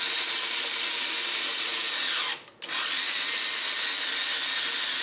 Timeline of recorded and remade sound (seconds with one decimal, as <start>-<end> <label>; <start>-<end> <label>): 0.0-5.0 recorded